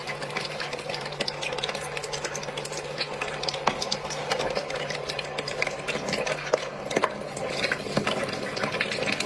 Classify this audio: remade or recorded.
recorded